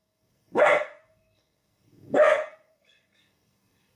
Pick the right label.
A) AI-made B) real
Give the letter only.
A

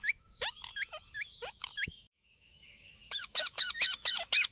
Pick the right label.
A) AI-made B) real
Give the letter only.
A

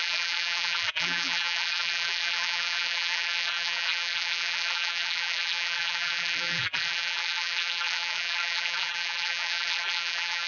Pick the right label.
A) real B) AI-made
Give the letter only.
B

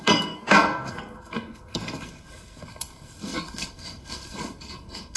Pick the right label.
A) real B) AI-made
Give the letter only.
B